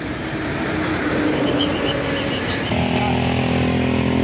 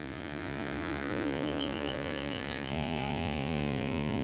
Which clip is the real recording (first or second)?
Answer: first